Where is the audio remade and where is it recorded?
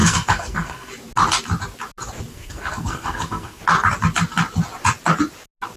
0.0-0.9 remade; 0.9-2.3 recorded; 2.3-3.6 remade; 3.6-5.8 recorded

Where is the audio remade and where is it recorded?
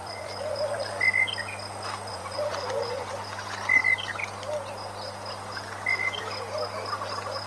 0.0-1.0 remade; 1.0-2.1 recorded; 2.1-3.1 remade; 3.1-7.5 recorded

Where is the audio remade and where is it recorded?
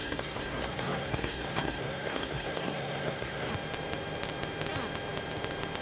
0.0-3.5 remade; 3.5-5.8 recorded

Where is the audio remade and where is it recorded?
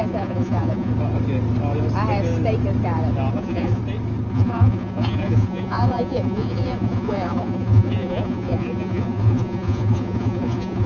0.0-0.9 remade; 0.9-3.3 recorded; 3.3-3.8 remade; 3.8-4.3 recorded; 4.3-10.9 remade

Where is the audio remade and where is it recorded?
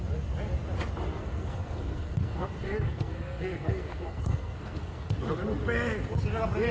0.0-1.1 recorded; 1.1-5.1 remade; 5.1-6.7 recorded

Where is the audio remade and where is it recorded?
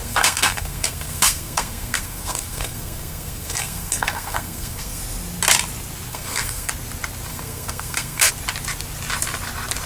0.0-5.0 remade; 5.0-6.1 recorded; 6.1-6.7 remade; 6.7-7.3 recorded; 7.3-8.3 remade; 8.3-9.9 recorded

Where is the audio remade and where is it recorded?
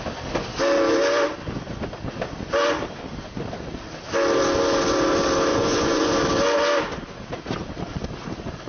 0.0-5.5 recorded; 5.5-6.1 remade; 6.1-8.7 recorded